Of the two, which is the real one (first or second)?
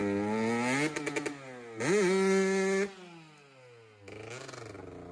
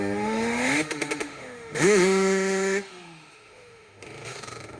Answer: first